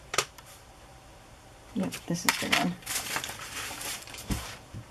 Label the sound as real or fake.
fake